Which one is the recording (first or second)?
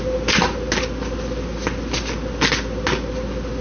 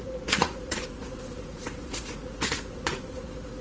first